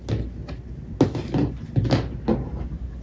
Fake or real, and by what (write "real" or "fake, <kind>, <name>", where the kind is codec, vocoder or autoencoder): real